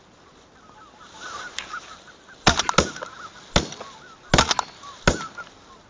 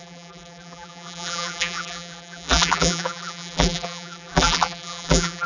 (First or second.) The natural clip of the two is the first